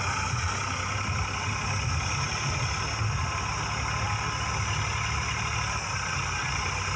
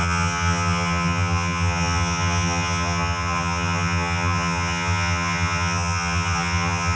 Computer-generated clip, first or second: second